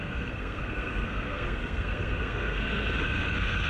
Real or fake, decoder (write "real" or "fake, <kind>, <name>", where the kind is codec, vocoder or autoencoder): fake, codec, SNAC